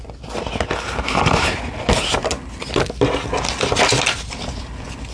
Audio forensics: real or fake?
real